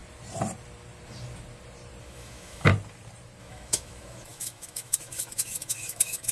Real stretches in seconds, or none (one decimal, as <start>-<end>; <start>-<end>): 0.0-2.0; 2.7-3.4